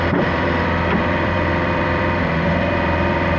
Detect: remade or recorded remade